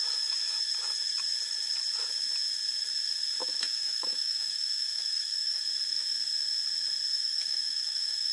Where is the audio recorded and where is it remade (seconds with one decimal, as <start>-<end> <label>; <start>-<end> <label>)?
0.0-3.4 recorded; 3.4-5.6 remade; 5.6-7.1 recorded; 7.1-8.3 remade